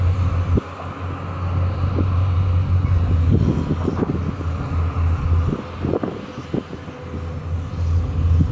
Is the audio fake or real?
real